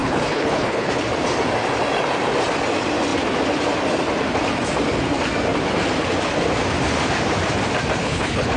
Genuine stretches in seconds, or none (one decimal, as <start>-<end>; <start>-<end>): 0.9-8.0